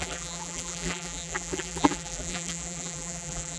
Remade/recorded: remade